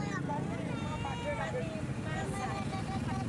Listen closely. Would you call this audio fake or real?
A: fake